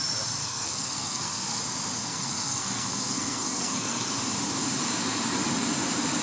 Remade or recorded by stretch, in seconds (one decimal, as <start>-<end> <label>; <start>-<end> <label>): 0.0-0.4 recorded; 0.4-1.6 remade; 1.6-2.0 recorded; 2.0-4.1 remade; 4.1-6.2 recorded